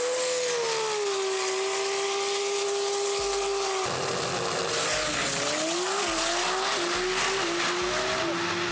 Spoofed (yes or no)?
no